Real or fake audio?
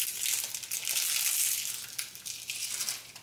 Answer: real